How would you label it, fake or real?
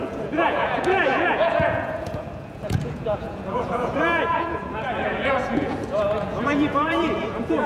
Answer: fake